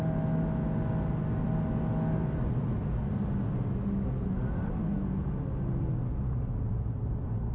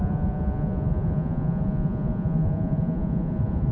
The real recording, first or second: first